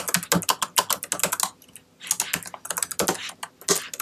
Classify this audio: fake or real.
real